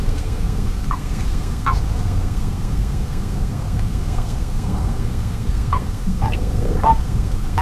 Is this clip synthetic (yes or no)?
yes